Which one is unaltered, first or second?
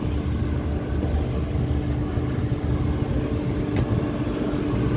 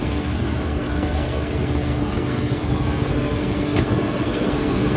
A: first